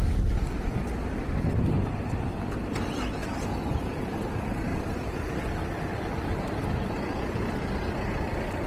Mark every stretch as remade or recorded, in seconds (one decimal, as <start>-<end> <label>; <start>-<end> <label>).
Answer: 0.0-4.7 recorded; 4.7-5.3 remade; 5.3-5.9 recorded; 5.9-6.6 remade; 6.6-8.7 recorded